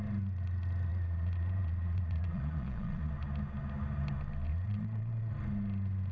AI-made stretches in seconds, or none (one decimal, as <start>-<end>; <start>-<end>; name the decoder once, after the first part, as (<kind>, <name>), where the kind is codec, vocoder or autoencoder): 0.9-3.1 (vocoder, Vocos); 4.5-5.3